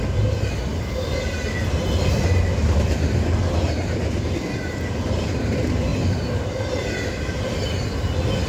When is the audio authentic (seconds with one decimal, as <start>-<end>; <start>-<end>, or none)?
0.0-5.9; 6.9-8.5